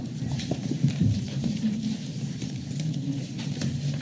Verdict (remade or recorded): remade